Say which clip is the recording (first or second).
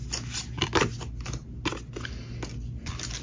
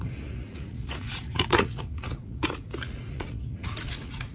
first